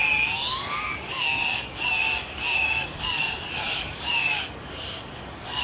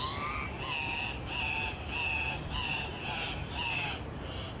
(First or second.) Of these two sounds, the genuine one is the second